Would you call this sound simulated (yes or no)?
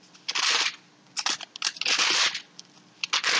no